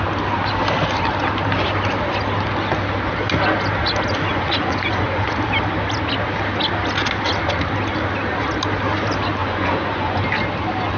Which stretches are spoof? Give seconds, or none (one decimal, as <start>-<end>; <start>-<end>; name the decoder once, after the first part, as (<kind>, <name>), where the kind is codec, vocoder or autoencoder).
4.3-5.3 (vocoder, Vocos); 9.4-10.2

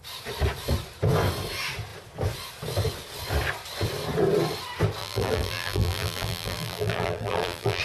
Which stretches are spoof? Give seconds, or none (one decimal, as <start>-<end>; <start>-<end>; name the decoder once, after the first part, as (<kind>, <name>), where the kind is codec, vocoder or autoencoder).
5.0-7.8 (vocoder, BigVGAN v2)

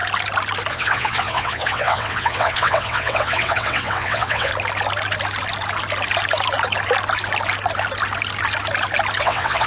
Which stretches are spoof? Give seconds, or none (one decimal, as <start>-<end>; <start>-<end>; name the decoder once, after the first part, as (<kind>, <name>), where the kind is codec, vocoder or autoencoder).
0.7-4.5 (vocoder, WaveNeXt); 9.2-9.7

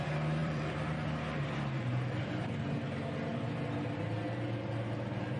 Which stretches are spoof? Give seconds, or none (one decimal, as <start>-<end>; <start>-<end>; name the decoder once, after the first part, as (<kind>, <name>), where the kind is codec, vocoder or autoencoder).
0.4-2.2 (vocoder, BigVGAN v2)

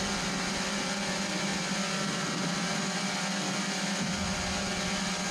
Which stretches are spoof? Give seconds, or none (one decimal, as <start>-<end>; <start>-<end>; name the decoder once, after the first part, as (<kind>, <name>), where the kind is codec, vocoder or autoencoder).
none

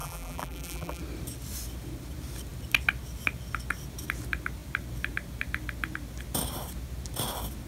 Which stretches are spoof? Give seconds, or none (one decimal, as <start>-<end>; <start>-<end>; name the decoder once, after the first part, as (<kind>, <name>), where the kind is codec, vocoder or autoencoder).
0.0-1.0 (vocoder, BigVGAN v2)

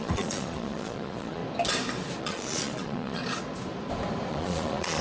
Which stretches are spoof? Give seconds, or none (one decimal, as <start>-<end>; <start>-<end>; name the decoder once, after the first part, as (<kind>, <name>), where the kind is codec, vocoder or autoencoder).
0.0-1.4 (vocoder, Vocos); 2.2-3.2; 4.3-5.0